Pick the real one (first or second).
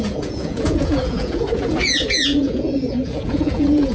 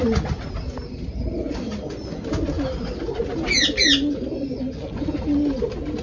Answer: second